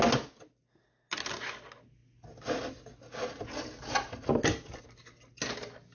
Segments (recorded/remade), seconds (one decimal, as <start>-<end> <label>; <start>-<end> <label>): 0.0-5.9 recorded